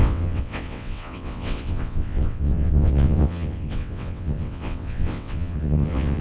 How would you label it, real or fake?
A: fake